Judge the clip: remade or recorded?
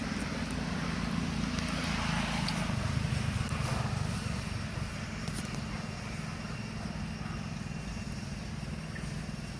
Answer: recorded